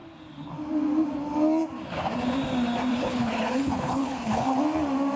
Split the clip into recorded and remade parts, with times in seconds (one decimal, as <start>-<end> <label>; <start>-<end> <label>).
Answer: 0.0-2.9 recorded; 2.9-4.6 remade; 4.6-5.2 recorded